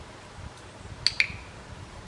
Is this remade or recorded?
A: recorded